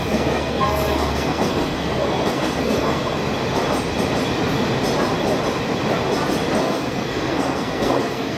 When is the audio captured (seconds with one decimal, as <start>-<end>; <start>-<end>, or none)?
3.2-6.6